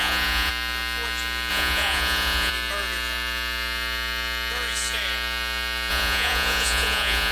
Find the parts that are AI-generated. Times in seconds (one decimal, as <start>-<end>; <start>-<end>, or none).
0.0-0.5; 1.5-2.5; 5.9-7.3